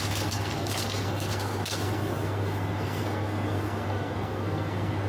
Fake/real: fake